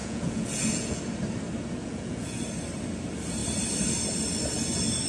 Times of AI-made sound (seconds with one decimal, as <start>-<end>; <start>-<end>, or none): 0.0-1.0; 1.8-2.4